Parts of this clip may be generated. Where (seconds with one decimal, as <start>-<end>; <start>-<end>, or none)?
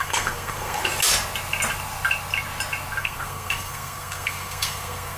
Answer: 0.0-0.8; 3.0-5.2